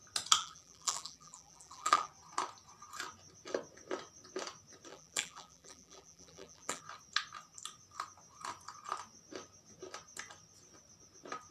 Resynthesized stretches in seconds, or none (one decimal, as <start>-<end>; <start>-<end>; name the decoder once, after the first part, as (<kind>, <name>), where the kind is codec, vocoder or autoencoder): 0.4-2.1 (vocoder, BigVGAN v2); 4.9-6.8

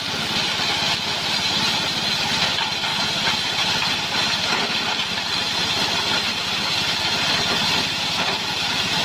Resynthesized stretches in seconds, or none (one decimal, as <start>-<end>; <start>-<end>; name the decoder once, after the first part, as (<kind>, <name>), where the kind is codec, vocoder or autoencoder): 2.9-3.5 (vocoder, BigVGAN v2)